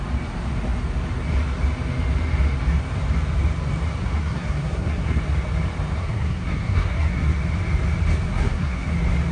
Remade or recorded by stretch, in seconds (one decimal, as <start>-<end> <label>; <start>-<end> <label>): 0.0-4.0 recorded; 4.0-5.2 remade; 5.2-6.0 recorded; 6.0-7.4 remade; 7.4-8.3 recorded; 8.3-8.9 remade; 8.9-9.3 recorded